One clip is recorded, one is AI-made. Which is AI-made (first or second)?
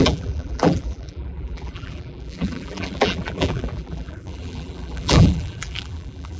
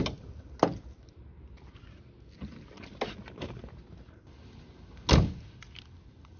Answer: first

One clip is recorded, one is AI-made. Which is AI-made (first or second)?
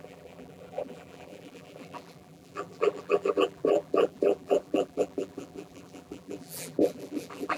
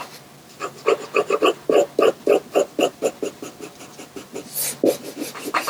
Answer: first